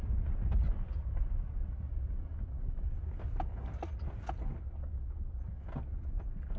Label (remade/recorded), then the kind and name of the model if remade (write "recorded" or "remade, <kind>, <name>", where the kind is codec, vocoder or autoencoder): recorded